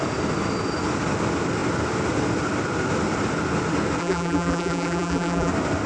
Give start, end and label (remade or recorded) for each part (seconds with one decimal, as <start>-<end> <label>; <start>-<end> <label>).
0.0-4.0 recorded; 4.0-5.5 remade; 5.5-5.9 recorded